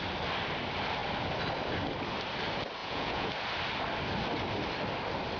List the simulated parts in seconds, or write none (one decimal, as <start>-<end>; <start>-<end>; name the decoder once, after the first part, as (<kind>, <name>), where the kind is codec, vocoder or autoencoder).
2.8-3.3 (vocoder, Vocos)